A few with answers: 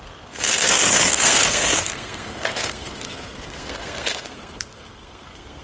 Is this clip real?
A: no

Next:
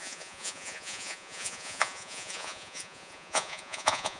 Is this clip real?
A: no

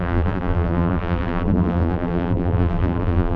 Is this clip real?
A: no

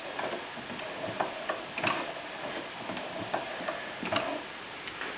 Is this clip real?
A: yes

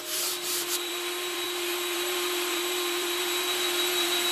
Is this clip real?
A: no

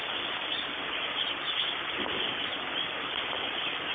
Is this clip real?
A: yes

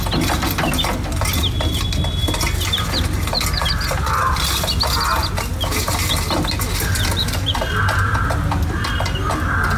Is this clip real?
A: yes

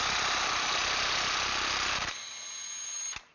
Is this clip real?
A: yes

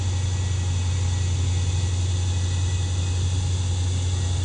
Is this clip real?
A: yes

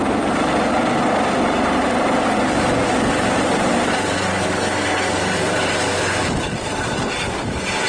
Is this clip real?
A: yes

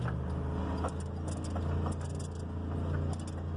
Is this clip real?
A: yes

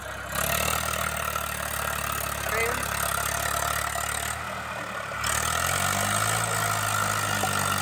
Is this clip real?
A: yes